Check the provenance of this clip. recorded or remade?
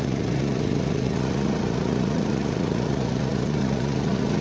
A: remade